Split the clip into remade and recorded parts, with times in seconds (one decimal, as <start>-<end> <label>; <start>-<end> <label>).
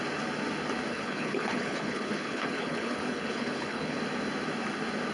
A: 0.0-0.9 recorded; 0.9-4.0 remade; 4.0-5.1 recorded